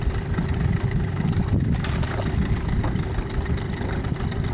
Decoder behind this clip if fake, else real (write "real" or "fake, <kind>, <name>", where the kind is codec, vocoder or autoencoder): real